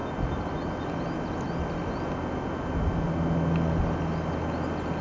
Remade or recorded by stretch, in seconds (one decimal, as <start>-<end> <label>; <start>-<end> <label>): 0.0-5.0 recorded